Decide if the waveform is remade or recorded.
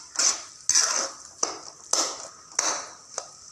recorded